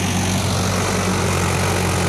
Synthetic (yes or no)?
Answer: no